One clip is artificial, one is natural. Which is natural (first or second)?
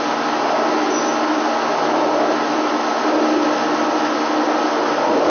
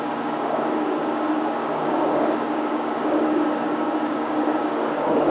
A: first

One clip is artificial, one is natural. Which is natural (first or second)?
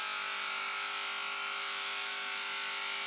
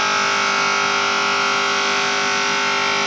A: second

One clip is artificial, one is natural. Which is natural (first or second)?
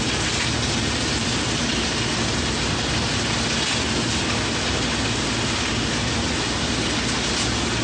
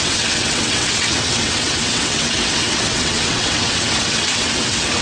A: first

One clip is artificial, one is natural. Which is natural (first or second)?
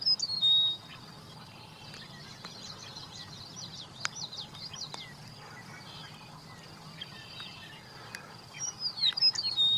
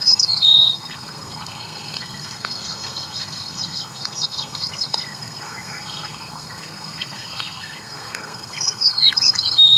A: first